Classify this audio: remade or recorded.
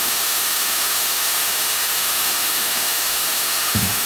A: remade